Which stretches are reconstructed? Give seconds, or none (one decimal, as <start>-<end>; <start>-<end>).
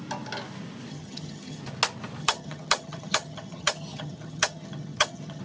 0.9-1.6; 2.2-5.4